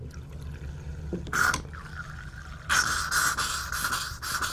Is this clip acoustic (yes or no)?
yes